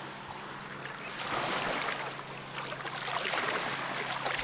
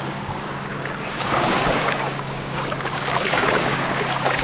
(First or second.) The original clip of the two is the first